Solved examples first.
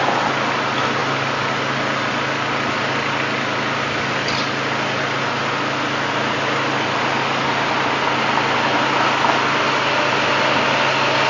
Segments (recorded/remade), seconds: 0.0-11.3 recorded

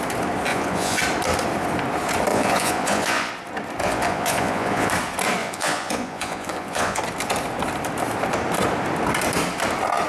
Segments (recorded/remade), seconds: 0.0-0.5 recorded; 0.5-1.0 remade; 1.0-2.3 recorded; 2.3-3.3 remade; 3.3-3.8 recorded; 3.8-4.9 remade; 4.9-5.4 recorded; 5.4-7.0 remade; 7.0-10.1 recorded